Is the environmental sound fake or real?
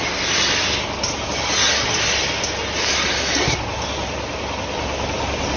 real